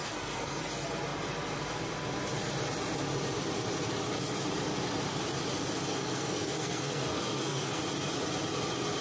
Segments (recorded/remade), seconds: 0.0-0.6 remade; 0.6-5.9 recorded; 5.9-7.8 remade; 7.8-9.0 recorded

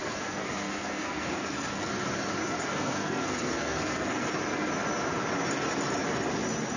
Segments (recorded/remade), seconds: 0.0-1.9 remade; 1.9-2.7 recorded; 2.7-4.3 remade; 4.3-6.8 recorded